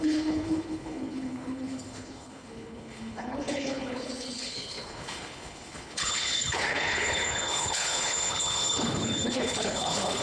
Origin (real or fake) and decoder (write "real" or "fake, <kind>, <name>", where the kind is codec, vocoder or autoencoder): fake, codec, HILCodec